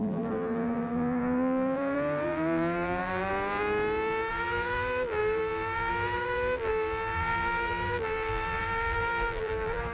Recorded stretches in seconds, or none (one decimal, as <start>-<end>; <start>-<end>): 3.3-4.3